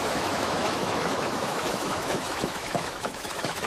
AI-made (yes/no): yes